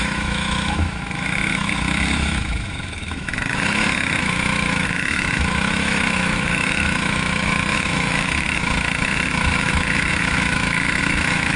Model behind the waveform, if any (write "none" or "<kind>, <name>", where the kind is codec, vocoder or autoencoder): autoencoder, DAC-VAE